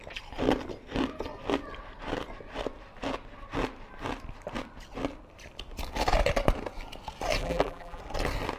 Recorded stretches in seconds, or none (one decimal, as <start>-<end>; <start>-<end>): 0.0-7.4; 8.0-8.6